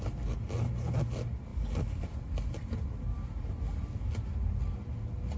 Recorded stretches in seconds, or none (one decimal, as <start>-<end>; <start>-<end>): 0.0-5.4